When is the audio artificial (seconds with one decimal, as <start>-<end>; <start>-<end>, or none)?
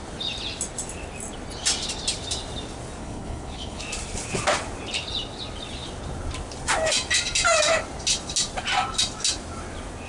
3.0-3.8